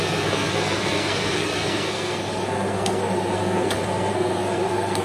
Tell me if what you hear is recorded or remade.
remade